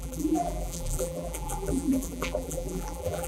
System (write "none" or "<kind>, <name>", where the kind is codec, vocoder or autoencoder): vocoder, BigVGAN v2